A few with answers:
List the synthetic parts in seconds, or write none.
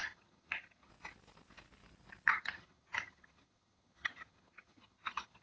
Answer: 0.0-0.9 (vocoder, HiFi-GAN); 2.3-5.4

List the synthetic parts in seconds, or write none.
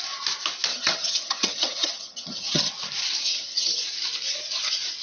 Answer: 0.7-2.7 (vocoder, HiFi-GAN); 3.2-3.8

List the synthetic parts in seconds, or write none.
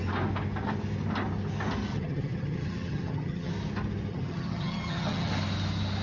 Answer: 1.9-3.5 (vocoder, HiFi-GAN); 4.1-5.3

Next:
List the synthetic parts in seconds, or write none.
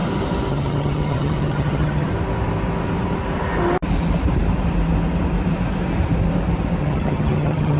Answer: 0.5-2.1 (vocoder, HiFi-GAN); 6.8-7.8